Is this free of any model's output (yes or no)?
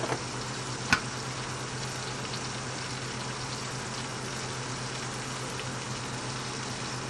yes